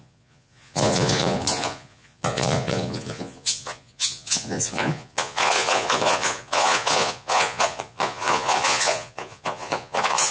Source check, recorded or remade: remade